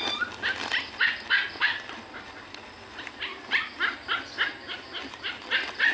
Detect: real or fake real